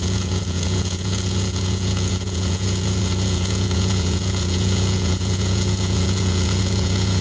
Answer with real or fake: fake